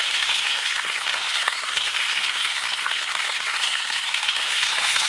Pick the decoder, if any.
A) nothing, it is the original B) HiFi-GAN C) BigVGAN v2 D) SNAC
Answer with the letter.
D